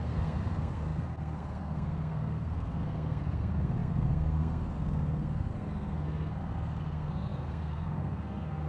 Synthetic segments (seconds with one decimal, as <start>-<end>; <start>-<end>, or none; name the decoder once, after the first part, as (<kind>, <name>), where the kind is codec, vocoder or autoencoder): 0.0-8.7 (codec, SNAC)